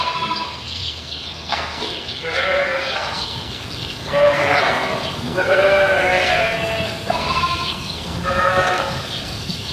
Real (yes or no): no